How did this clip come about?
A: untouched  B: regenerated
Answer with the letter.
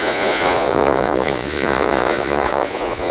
B